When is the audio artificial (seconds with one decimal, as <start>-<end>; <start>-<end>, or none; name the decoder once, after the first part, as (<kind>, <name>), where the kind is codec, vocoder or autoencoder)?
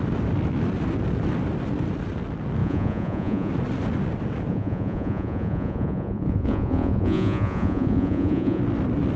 2.6-3.5 (vocoder, Vocos); 4.5-8.6